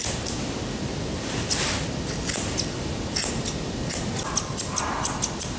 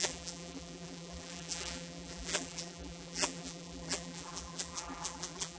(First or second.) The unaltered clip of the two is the first